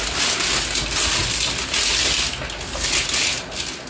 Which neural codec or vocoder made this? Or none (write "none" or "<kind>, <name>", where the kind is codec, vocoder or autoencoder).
none